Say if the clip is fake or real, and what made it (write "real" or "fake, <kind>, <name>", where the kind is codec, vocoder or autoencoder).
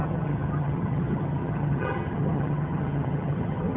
fake, vocoder, HiFi-GAN